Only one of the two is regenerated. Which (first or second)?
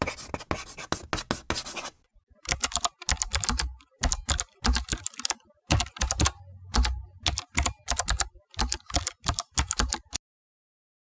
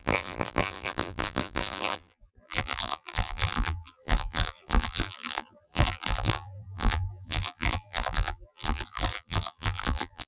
second